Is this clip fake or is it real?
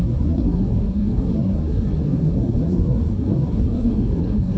fake